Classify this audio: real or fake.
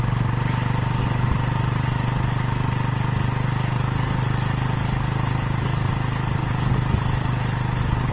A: real